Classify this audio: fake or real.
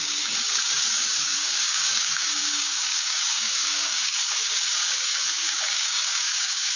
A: fake